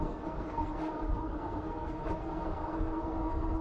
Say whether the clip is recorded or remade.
remade